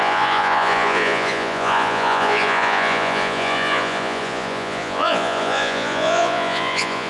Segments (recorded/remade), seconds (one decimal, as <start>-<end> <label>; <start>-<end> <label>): 0.0-7.1 remade